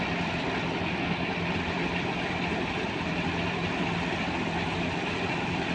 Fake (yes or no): yes